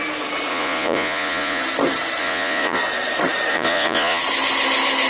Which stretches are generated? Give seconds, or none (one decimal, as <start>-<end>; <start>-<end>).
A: 0.5-1.6; 2.2-2.8; 3.5-4.2